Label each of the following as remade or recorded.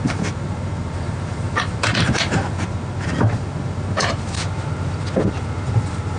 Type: remade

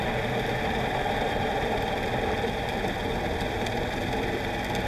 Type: recorded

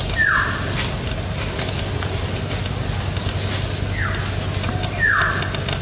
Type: recorded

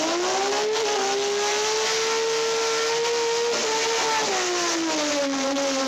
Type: recorded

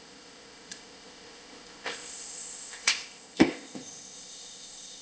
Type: remade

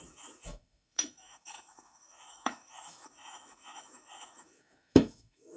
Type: remade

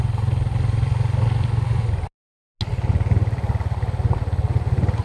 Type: recorded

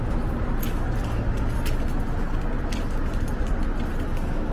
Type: recorded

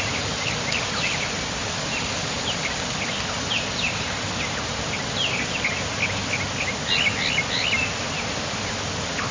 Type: recorded